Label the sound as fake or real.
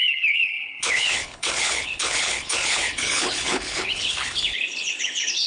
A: fake